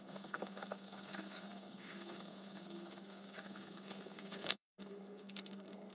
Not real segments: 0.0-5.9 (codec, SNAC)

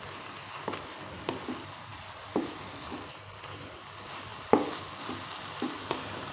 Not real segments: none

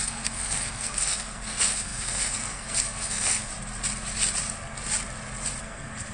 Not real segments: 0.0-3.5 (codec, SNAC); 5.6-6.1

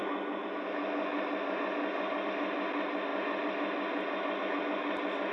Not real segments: none

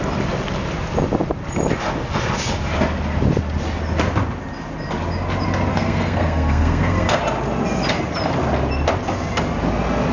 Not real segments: 5.7-7.2 (codec, SNAC)

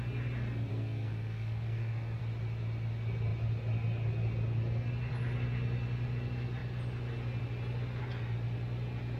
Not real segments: 0.7-2.2 (codec, SNAC)

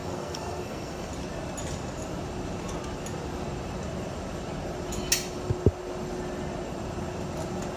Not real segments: 0.0-1.1 (codec, SNAC)